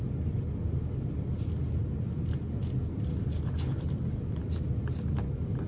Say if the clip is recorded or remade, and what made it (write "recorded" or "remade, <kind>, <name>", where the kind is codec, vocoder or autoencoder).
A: recorded